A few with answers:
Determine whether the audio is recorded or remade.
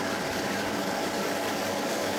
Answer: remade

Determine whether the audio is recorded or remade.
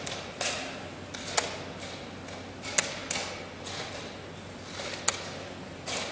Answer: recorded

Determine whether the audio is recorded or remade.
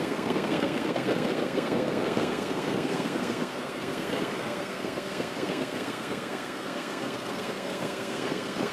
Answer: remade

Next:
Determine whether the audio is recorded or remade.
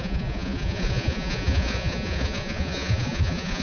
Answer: remade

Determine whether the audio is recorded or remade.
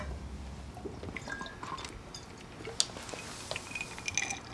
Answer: recorded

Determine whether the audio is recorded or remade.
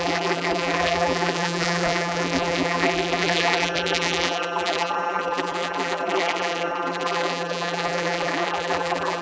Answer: remade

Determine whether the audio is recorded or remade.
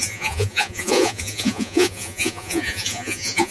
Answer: remade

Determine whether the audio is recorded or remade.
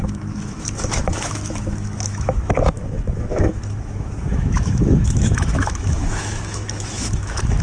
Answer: remade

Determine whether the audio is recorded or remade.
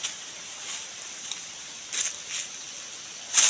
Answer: recorded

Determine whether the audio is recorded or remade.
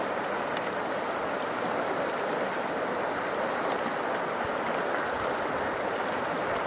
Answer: recorded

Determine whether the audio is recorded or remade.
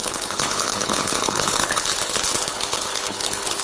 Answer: remade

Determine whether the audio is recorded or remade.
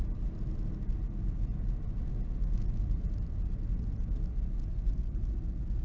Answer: recorded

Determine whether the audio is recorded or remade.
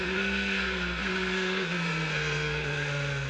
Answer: remade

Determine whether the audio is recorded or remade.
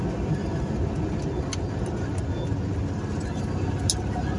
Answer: recorded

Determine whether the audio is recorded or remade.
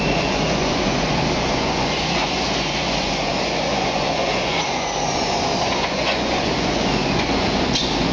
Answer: remade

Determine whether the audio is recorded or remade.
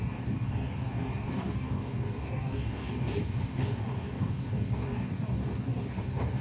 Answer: remade